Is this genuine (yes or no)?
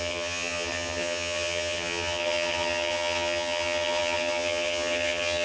no